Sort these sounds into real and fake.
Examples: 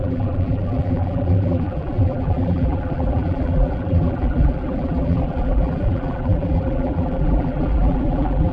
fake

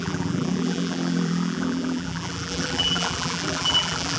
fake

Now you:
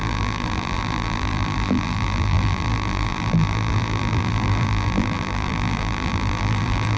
fake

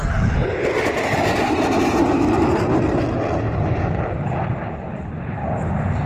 real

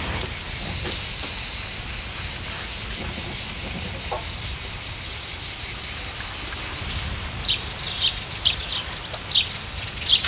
fake